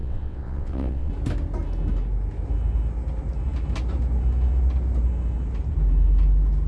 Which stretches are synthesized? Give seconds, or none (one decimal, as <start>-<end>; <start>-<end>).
0.0-1.1